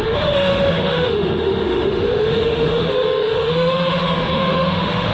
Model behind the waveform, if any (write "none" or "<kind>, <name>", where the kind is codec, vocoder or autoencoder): autoencoder, DAC-VAE